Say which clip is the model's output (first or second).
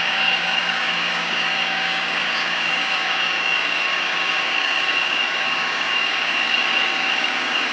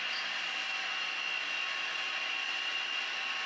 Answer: first